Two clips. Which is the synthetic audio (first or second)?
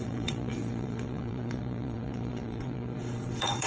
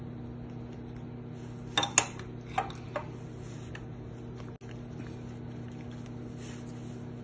first